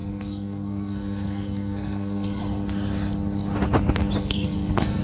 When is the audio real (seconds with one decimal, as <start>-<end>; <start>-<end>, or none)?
2.4-4.2

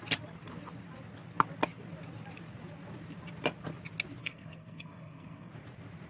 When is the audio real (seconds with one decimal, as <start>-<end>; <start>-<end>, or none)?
0.0-4.2; 5.5-6.1

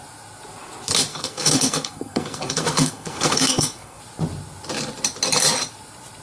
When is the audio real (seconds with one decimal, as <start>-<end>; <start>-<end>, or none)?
0.0-1.1; 4.0-6.2

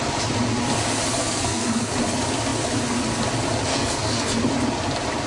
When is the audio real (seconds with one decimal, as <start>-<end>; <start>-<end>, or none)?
0.0-1.2; 1.9-3.7; 4.4-5.3

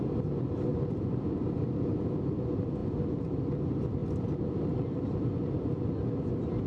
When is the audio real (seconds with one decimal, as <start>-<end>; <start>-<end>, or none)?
0.0-6.7

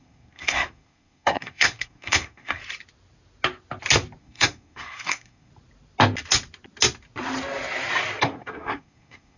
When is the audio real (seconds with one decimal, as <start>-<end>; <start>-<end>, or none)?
2.6-4.2; 5.5-8.2

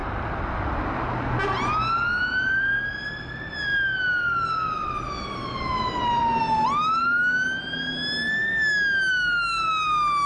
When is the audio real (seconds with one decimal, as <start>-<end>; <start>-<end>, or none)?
0.0-10.3